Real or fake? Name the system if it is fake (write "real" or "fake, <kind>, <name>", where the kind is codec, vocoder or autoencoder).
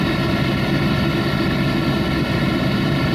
real